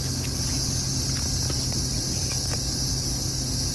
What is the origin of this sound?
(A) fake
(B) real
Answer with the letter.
B